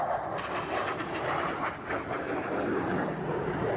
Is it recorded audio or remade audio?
recorded